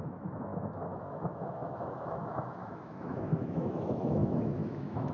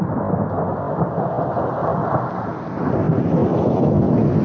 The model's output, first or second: first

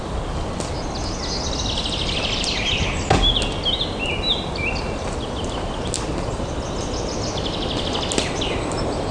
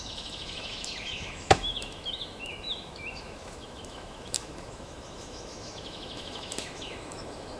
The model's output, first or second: second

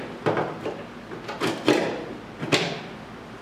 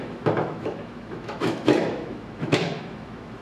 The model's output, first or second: second